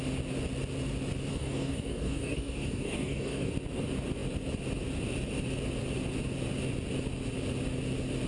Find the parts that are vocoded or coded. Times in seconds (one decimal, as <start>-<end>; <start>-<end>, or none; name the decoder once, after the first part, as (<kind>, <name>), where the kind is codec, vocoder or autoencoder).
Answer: 1.3-3.5 (codec, DAC)